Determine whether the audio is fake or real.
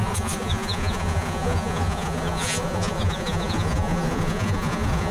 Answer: fake